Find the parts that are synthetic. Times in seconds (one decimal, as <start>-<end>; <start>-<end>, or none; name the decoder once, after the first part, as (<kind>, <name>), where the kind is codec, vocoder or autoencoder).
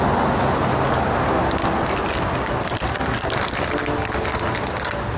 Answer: none